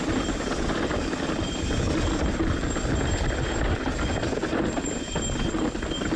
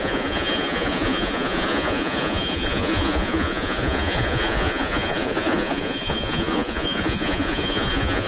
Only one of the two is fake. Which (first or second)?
second